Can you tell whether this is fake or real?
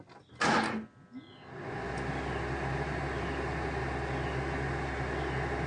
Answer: real